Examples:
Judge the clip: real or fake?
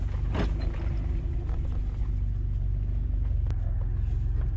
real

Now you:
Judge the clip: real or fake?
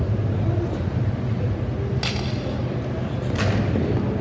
real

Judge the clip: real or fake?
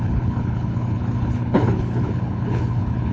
fake